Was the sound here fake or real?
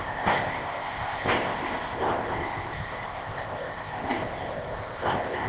fake